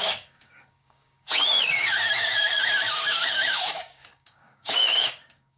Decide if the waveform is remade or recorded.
remade